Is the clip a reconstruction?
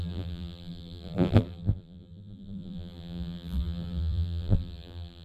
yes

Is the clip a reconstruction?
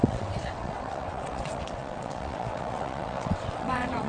yes